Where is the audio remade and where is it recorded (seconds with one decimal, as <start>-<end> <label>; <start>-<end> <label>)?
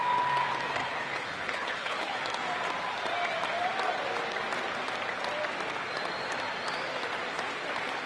0.0-0.8 recorded; 0.8-2.2 remade; 2.2-8.1 recorded